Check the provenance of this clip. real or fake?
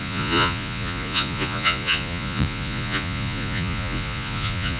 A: fake